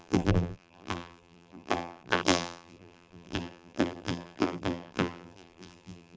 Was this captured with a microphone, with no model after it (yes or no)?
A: no